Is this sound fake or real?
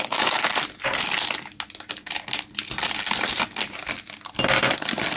real